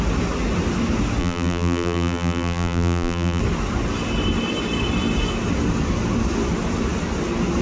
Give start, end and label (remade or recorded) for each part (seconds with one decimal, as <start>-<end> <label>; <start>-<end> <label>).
0.0-1.2 recorded; 1.2-3.4 remade; 3.4-7.6 recorded